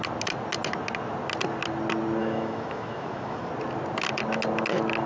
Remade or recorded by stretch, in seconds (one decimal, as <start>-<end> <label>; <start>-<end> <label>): 0.0-2.2 recorded; 2.2-3.5 remade; 3.5-5.1 recorded